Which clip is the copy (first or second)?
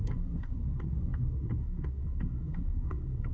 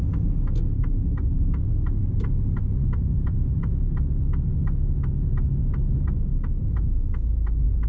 first